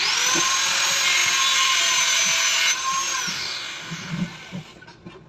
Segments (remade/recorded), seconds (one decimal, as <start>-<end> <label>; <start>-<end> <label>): 0.0-3.3 recorded; 3.3-4.1 remade; 4.1-5.3 recorded